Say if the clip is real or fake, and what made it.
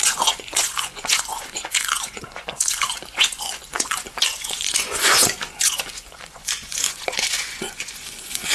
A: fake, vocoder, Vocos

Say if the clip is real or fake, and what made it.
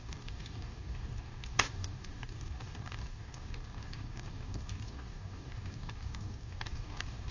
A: fake, codec, DAC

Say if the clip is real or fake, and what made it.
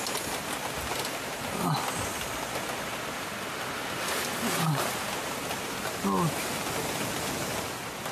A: real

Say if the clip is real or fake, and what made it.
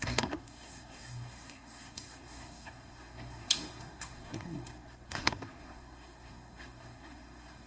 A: fake, codec, SNAC